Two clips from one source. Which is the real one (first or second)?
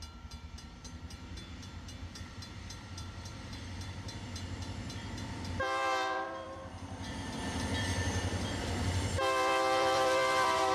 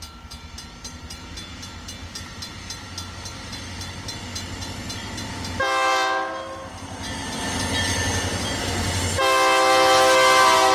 second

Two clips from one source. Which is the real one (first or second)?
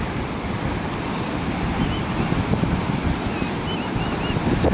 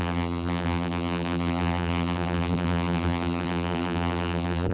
first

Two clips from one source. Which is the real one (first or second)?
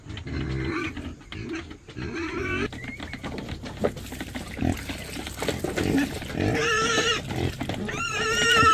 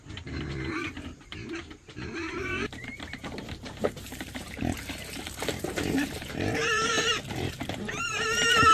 first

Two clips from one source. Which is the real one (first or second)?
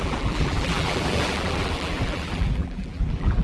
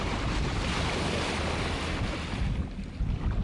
second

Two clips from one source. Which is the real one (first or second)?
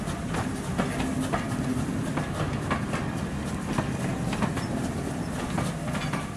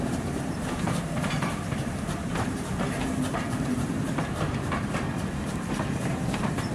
first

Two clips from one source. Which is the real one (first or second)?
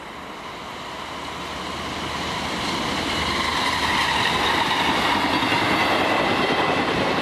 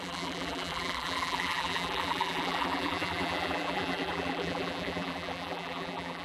first